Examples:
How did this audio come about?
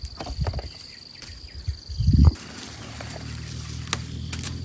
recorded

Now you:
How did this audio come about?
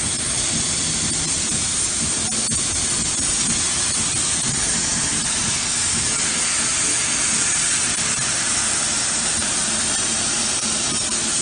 recorded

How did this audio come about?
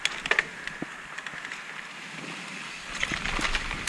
recorded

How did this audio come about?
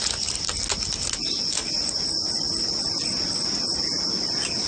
recorded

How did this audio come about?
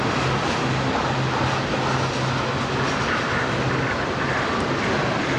recorded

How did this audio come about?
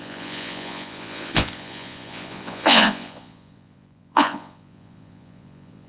remade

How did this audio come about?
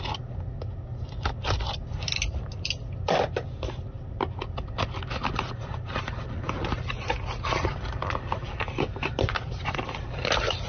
recorded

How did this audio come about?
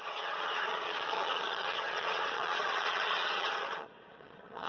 remade